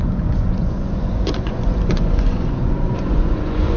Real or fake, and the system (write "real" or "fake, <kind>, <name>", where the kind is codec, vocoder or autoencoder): fake, vocoder, Vocos